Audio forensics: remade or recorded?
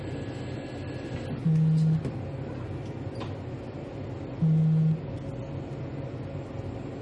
recorded